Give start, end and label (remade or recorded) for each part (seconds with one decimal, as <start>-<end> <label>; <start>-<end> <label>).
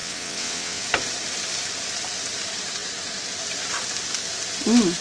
0.0-0.8 remade; 0.8-5.0 recorded